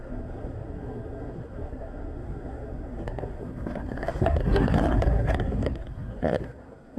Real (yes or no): no